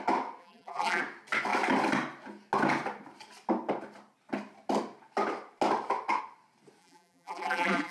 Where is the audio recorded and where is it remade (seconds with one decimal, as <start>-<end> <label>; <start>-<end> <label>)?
0.0-0.4 recorded; 0.4-1.0 remade; 1.0-6.8 recorded; 6.8-7.9 remade